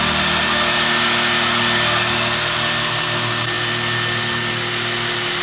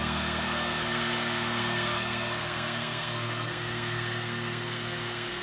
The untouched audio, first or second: first